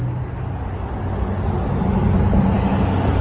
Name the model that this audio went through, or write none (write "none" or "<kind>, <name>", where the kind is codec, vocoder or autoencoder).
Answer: none